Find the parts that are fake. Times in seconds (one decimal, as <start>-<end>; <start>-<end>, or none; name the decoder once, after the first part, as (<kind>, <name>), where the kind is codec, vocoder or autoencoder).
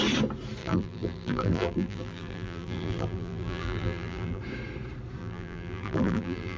0.6-4.4 (vocoder, BigVGAN v2); 5.2-6.6